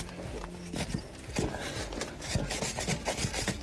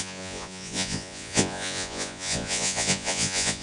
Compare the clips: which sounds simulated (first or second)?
second